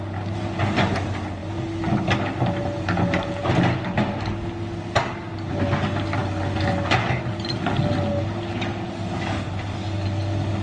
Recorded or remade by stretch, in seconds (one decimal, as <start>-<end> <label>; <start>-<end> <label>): 0.0-10.6 recorded